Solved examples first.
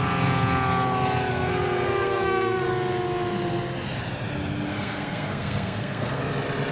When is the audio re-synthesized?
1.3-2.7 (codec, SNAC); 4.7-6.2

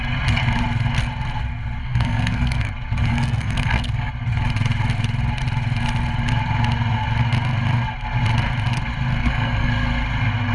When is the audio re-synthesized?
1.8-2.7 (codec, SNAC); 3.1-4.1; 9.2-9.7

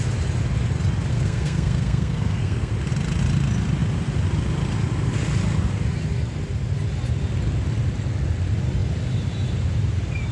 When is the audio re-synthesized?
1.1-2.7 (codec, SNAC)

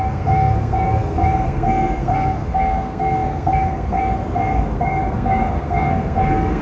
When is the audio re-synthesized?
0.0-6.6 (codec, SNAC)

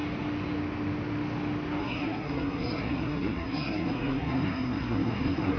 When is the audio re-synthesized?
1.8-5.6 (codec, SNAC)

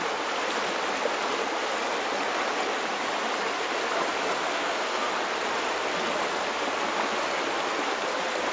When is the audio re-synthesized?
4.5-5.1 (codec, SNAC)